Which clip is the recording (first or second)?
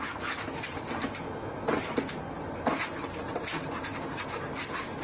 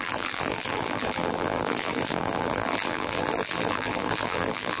first